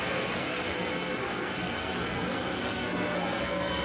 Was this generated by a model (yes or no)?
yes